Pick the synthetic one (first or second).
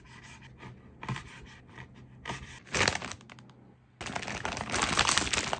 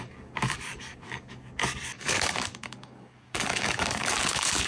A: second